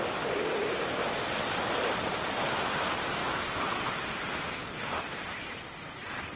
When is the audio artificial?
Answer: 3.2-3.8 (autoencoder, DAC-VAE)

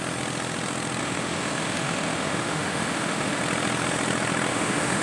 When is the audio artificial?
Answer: 1.0-3.4 (autoencoder, DAC-VAE); 4.5-5.0

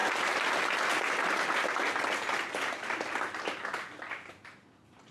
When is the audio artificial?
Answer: none

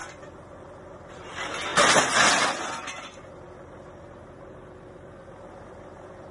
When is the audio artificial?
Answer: none

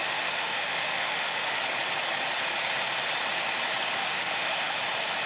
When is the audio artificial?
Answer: 0.0-1.6 (autoencoder, DAC-VAE); 4.0-4.8

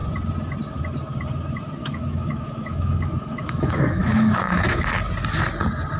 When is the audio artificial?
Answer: 1.8-4.9 (autoencoder, DAC-VAE)

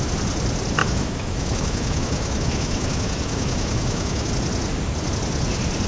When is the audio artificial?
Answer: 0.8-4.3 (autoencoder, DAC-VAE)

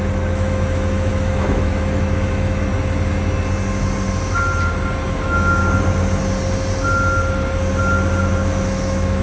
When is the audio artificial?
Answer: 0.0-2.7 (autoencoder, DAC-VAE); 5.1-5.6; 8.2-9.2